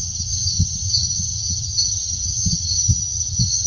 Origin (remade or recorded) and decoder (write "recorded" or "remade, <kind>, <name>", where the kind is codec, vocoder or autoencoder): remade, vocoder, HiFi-GAN